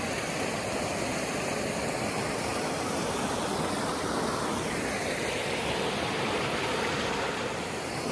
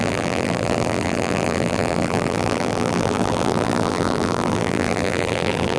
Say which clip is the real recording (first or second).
first